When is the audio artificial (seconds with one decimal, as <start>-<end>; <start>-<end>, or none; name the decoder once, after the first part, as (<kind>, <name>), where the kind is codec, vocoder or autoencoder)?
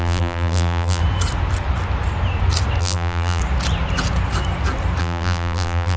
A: 0.0-1.0 (vocoder, BigVGAN v2); 2.8-3.4; 5.0-6.0